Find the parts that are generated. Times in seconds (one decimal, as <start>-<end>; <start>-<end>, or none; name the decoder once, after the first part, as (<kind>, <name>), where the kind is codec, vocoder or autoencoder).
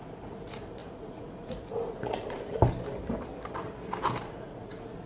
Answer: 0.0-2.6 (vocoder, Vocos); 4.2-5.1